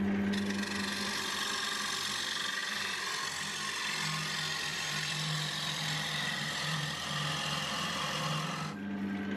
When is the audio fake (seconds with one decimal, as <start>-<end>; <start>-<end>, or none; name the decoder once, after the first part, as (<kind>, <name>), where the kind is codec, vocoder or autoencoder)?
2.6-3.1 (vocoder, BigVGAN v2); 4.7-8.2